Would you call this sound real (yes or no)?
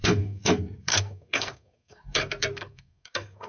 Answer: no